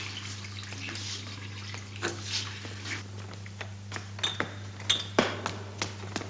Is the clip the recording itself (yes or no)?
yes